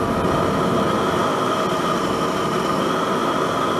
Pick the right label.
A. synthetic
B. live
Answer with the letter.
B